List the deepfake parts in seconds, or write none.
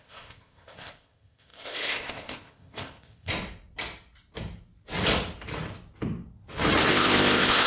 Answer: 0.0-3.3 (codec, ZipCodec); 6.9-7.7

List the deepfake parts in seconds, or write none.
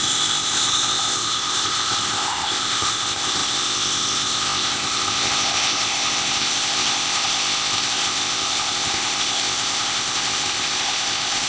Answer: 0.0-11.5 (codec, ZipCodec)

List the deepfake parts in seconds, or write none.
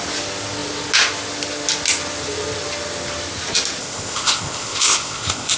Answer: 3.8-5.6 (codec, ZipCodec)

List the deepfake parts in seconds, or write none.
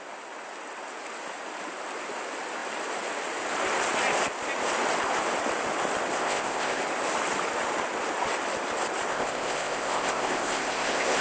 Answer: 6.2-6.8 (codec, ZipCodec); 9.1-11.2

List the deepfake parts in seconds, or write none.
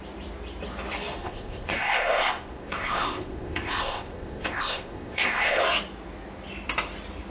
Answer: 1.2-5.6 (codec, ZipCodec)